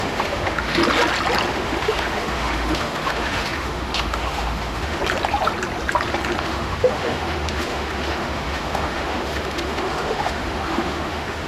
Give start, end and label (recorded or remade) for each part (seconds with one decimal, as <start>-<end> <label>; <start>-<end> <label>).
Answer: 0.0-0.8 remade; 0.8-1.5 recorded; 1.5-5.0 remade; 5.0-6.4 recorded; 6.4-11.5 remade